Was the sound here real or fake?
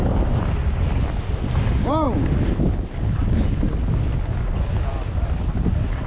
real